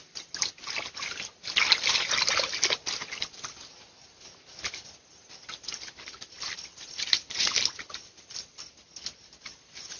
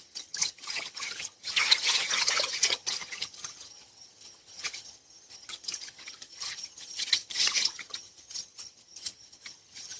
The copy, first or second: second